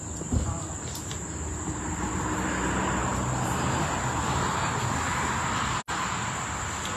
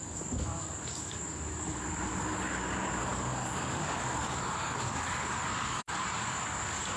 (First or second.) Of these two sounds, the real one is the first